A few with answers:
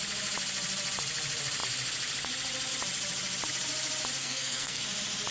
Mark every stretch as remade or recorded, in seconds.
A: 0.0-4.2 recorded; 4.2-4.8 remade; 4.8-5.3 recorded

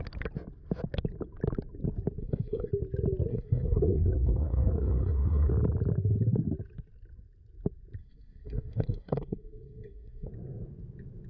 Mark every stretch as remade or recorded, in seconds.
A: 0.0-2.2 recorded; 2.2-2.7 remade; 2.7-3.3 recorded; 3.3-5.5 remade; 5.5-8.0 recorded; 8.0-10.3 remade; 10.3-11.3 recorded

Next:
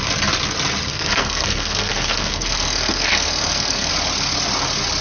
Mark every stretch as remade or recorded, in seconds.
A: 0.0-0.9 recorded; 0.9-3.9 remade; 3.9-5.0 recorded

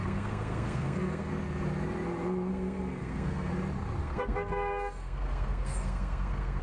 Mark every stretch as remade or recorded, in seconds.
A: 0.0-1.3 remade; 1.3-2.5 recorded; 2.5-3.5 remade; 3.5-4.0 recorded; 4.0-6.6 remade